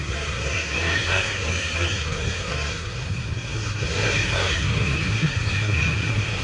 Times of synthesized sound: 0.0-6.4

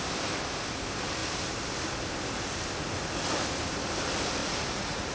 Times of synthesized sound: 4.4-5.1

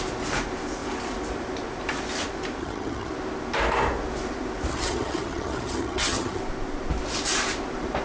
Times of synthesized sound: 2.6-3.1; 4.7-6.4

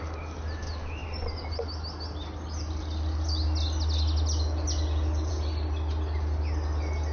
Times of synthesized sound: none

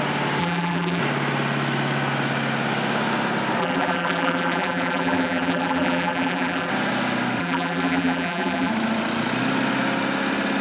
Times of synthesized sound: 0.4-1.0; 3.6-6.7; 7.4-8.7

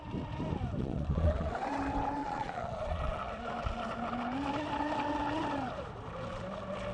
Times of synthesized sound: 0.8-1.5; 2.2-3.3

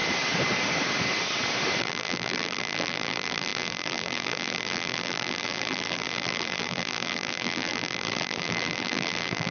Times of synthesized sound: 1.8-9.5

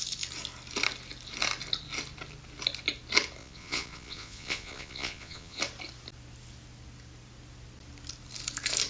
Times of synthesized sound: 3.4-5.6